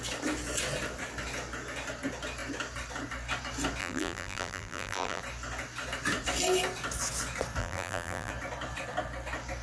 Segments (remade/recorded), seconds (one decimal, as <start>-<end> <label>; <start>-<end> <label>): 0.0-3.8 recorded; 3.8-5.2 remade; 5.2-7.6 recorded; 7.6-8.3 remade; 8.3-9.6 recorded